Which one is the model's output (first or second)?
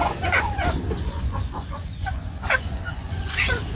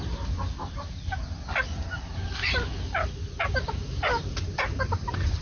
first